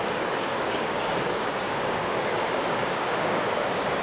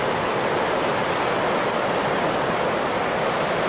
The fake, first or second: first